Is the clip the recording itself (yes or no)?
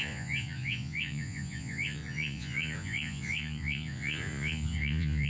no